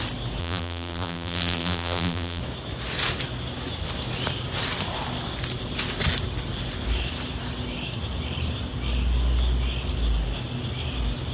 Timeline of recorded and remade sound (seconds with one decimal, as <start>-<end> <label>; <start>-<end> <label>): 0.0-0.4 recorded; 0.4-2.4 remade; 2.4-11.3 recorded